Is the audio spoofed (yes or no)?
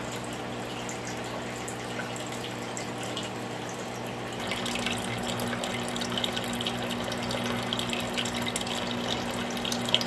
no